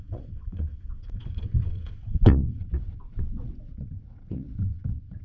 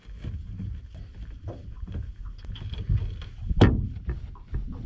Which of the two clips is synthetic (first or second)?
first